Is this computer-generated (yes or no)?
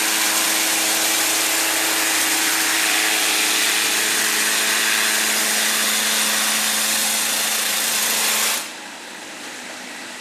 no